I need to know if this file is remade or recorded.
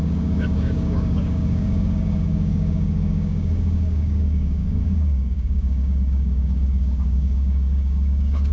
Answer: remade